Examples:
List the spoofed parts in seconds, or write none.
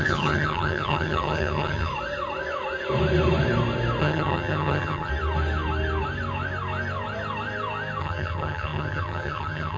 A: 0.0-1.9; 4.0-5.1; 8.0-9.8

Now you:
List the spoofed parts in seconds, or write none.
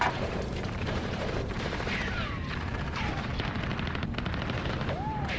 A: 0.0-3.1; 4.9-5.4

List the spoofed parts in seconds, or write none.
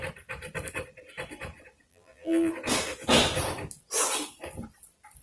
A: 1.9-2.5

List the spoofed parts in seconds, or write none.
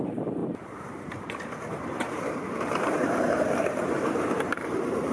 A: 0.0-5.1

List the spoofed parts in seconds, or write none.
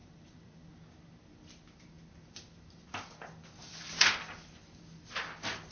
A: 0.0-0.7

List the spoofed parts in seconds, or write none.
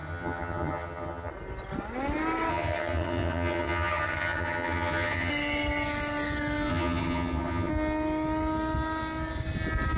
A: 0.0-1.3; 2.5-5.3; 6.7-7.7